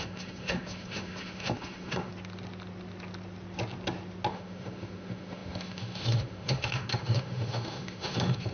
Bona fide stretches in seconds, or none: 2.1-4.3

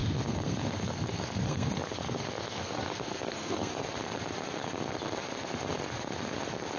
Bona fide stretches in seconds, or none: 3.7-6.8

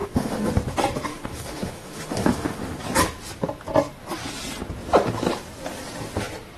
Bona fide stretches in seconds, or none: 0.5-1.1; 2.8-6.6

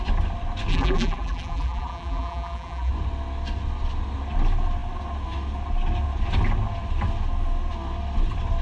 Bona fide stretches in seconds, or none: 0.0-0.7; 2.9-8.6

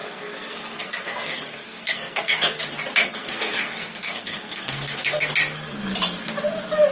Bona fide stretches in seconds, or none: 2.6-3.0; 5.3-6.9

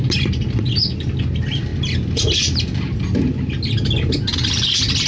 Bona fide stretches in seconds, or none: 0.0-5.1

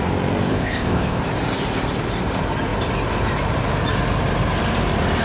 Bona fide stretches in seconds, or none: 0.0-0.5; 1.2-5.2

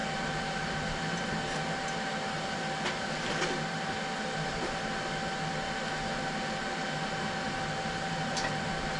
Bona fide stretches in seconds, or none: 0.0-9.0